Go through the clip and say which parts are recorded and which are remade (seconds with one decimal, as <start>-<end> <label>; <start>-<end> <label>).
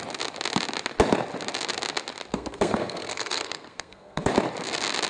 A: 0.0-2.3 recorded; 2.3-4.3 remade; 4.3-5.1 recorded